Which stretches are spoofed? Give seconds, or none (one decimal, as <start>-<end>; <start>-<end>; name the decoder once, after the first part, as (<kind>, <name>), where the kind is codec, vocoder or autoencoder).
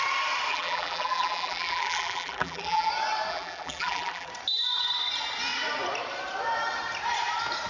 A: 0.5-2.9 (vocoder, BigVGAN v2); 3.3-4.3